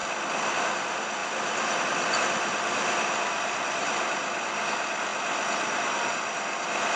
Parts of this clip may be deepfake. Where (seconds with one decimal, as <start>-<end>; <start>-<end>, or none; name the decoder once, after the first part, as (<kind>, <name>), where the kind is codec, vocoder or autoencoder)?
0.6-5.1 (vocoder, BigVGAN v2); 6.1-7.0